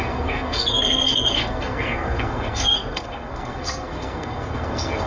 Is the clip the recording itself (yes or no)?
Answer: no